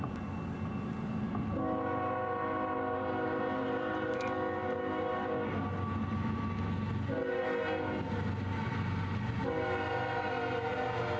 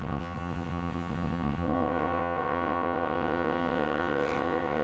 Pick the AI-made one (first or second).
second